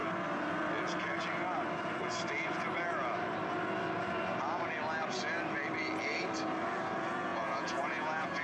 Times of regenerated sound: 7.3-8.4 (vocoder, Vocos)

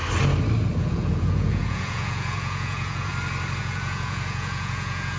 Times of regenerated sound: 0.8-3.1 (vocoder, Vocos); 3.6-5.2

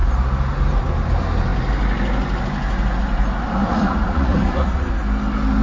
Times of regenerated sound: 3.7-4.9 (vocoder, Vocos)

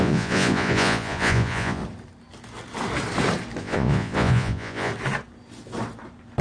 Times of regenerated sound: 0.0-1.8 (vocoder, Vocos); 3.6-4.9

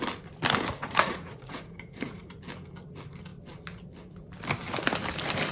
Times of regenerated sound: 0.8-2.3 (vocoder, Vocos)

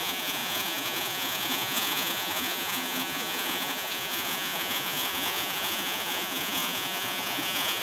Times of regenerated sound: 0.0-7.8 (vocoder, Vocos)